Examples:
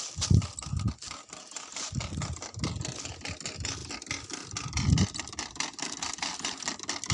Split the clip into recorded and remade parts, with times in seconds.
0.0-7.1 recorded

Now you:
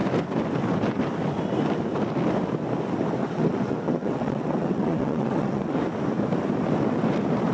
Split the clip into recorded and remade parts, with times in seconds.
0.0-3.2 recorded; 3.2-5.8 remade; 5.8-7.5 recorded

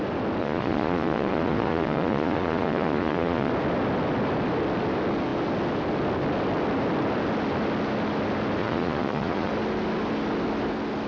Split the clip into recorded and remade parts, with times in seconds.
0.0-0.4 recorded; 0.4-3.5 remade; 3.5-8.6 recorded; 8.6-9.5 remade; 9.5-11.1 recorded

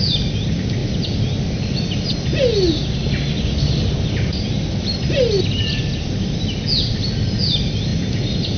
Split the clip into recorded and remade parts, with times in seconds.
0.0-8.6 recorded

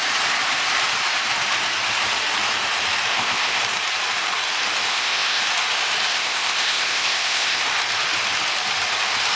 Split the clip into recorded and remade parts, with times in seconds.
0.0-3.1 recorded; 3.1-3.6 remade; 3.6-4.9 recorded; 4.9-5.4 remade; 5.4-6.1 recorded; 6.1-7.6 remade; 7.6-9.4 recorded

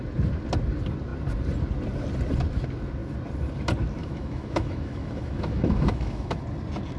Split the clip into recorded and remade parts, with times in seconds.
0.0-4.0 recorded; 4.0-6.4 remade; 6.4-7.0 recorded

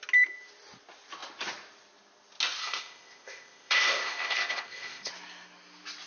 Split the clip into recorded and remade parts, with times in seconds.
0.0-2.6 recorded; 2.6-5.1 remade; 5.1-6.1 recorded